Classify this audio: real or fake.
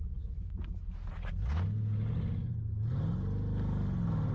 real